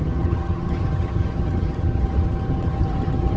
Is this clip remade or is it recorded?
remade